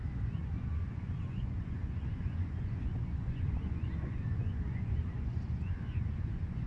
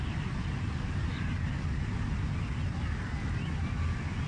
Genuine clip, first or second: second